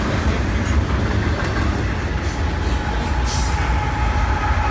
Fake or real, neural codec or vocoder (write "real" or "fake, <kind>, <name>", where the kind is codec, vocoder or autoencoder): real